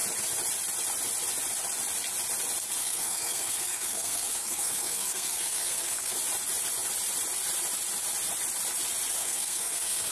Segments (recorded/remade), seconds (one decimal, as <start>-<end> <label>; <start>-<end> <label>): 0.0-2.8 recorded; 2.8-6.1 remade; 6.1-9.2 recorded; 9.2-10.1 remade

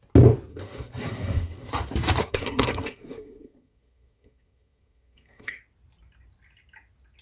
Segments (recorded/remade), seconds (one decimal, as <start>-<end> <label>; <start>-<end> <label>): 0.0-0.5 recorded; 0.5-1.7 remade; 1.7-2.2 recorded; 2.2-5.6 remade; 5.6-7.2 recorded

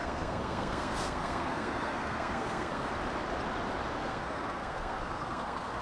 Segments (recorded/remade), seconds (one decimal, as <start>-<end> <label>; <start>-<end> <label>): 0.0-2.9 remade; 2.9-4.0 recorded; 4.0-5.8 remade

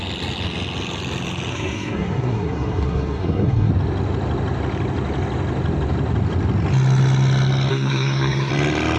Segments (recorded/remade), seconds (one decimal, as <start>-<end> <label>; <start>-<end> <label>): 0.0-1.5 recorded; 1.5-3.7 remade; 3.7-7.7 recorded; 7.7-8.5 remade; 8.5-9.0 recorded

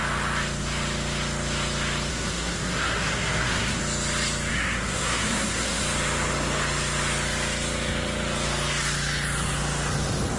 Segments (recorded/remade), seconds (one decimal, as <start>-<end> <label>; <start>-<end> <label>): 0.0-2.1 recorded; 2.1-3.8 remade; 3.8-4.5 recorded; 4.5-5.8 remade; 5.8-10.4 recorded

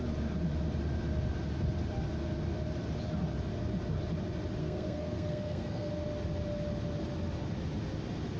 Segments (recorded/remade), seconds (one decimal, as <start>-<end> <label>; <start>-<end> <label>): 0.0-4.6 recorded; 4.6-5.9 remade; 5.9-8.4 recorded